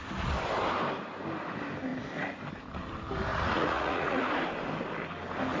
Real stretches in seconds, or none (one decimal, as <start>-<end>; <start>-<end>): 0.0-3.3; 4.2-5.6